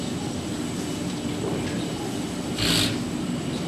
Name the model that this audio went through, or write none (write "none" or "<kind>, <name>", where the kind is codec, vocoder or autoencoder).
none